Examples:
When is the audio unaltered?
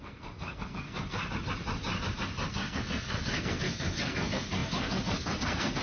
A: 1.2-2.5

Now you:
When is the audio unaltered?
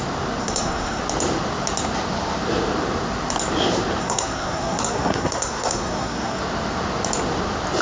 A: 0.0-0.4; 1.0-4.0; 6.4-7.8